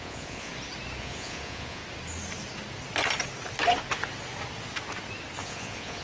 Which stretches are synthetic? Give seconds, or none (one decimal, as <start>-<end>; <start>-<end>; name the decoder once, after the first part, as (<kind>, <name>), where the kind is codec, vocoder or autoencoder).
0.0-0.5 (vocoder, Vocos); 1.0-1.8; 5.4-6.0